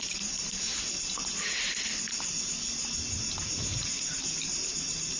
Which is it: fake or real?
real